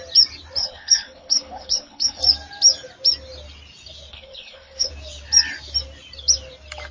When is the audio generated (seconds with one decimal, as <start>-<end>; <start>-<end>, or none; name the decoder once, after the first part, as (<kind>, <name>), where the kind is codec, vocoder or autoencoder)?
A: 0.6-2.2 (codec, HILCodec); 4.1-4.9